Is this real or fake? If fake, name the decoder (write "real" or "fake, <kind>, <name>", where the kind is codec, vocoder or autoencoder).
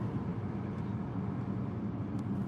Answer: real